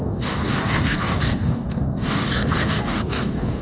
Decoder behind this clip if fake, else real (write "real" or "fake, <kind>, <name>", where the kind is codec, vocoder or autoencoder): fake, codec, DAC